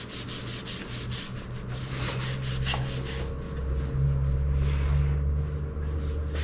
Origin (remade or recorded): recorded